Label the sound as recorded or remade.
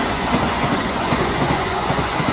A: remade